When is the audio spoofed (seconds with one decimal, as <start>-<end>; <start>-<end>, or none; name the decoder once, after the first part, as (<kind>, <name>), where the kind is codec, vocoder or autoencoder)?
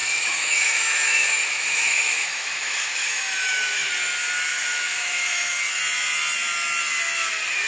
0.0-3.9 (autoencoder, DAC-VAE); 4.5-5.8